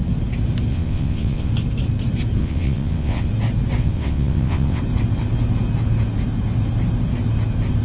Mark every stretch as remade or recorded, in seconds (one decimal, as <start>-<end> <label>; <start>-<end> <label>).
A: 0.0-0.7 recorded; 0.7-1.5 remade; 1.5-2.4 recorded; 2.4-3.3 remade; 3.3-3.8 recorded; 3.8-4.8 remade; 4.8-7.8 recorded